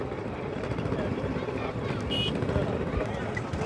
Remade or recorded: remade